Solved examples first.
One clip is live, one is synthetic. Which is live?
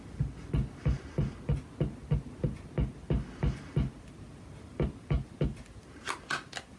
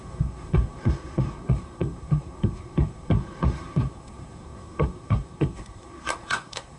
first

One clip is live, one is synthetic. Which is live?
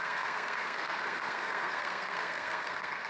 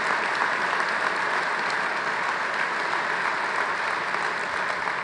second